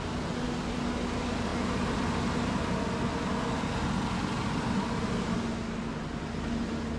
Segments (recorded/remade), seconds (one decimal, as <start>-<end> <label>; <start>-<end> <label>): 0.0-7.0 recorded